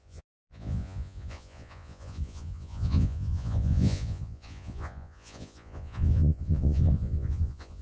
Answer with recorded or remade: remade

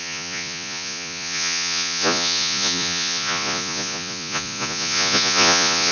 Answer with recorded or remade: remade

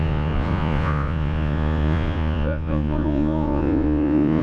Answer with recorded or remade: remade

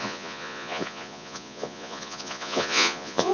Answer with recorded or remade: remade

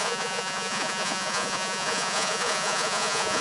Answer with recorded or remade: remade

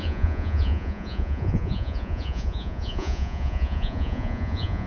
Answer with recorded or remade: remade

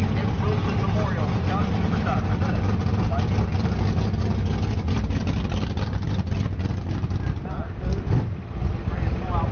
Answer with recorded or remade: recorded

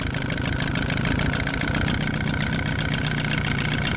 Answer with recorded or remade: recorded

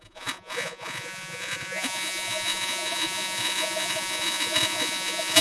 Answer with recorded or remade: remade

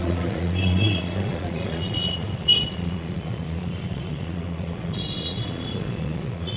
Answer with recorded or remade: remade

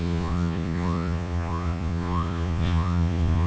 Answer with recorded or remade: remade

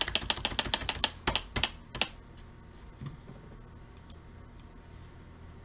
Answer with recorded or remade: recorded